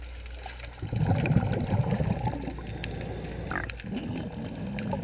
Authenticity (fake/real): real